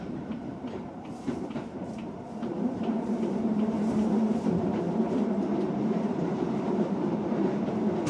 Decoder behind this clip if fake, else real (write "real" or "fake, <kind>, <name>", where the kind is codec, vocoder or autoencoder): fake, vocoder, BigVGAN v2